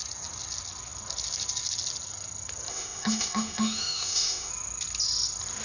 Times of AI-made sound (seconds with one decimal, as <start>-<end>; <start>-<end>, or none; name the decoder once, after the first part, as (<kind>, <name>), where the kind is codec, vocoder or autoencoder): 2.7-4.5 (autoencoder, DAC-VAE)